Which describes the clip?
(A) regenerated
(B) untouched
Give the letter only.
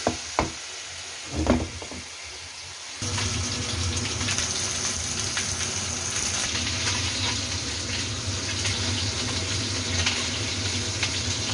B